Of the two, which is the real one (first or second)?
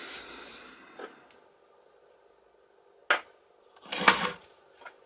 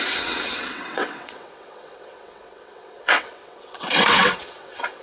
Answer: first